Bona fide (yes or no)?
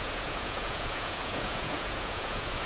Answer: no